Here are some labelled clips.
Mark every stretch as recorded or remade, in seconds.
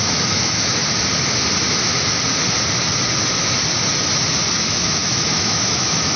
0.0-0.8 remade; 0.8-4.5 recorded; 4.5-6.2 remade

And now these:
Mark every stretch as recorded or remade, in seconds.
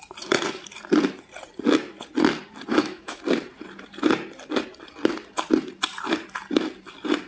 0.0-2.7 recorded; 2.7-3.2 remade; 3.2-7.3 recorded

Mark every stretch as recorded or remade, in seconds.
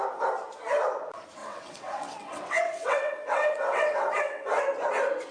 0.0-1.4 recorded; 1.4-4.6 remade; 4.6-5.3 recorded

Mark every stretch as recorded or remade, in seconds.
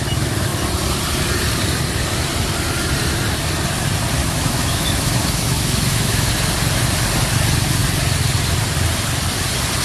0.0-4.2 recorded; 4.2-6.3 remade; 6.3-9.8 recorded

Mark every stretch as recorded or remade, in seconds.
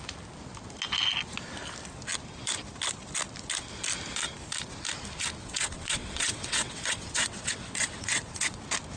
0.0-5.4 recorded; 5.4-8.6 remade; 8.6-9.0 recorded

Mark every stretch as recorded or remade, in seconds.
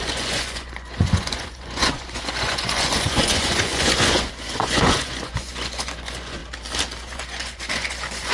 0.0-6.4 remade; 6.4-7.0 recorded; 7.0-8.3 remade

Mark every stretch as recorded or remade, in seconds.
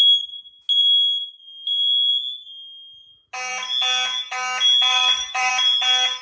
0.0-4.9 recorded; 4.9-5.5 remade; 5.5-6.2 recorded